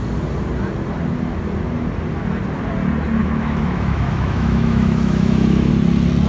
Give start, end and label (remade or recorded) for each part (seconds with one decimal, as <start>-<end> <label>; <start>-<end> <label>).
0.0-3.2 recorded; 3.2-5.7 remade; 5.7-6.3 recorded